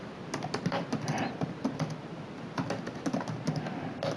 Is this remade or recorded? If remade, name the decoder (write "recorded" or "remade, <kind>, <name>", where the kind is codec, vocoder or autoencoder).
recorded